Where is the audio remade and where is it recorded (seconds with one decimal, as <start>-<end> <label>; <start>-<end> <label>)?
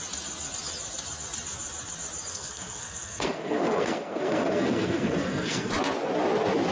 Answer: 0.0-2.3 recorded; 2.3-5.7 remade; 5.7-6.7 recorded